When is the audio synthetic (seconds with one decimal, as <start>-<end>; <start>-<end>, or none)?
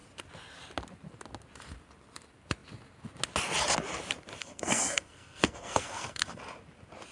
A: 4.4-6.4